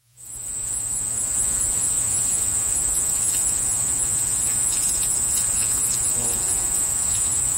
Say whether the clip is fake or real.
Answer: fake